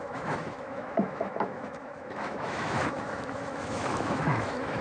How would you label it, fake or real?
fake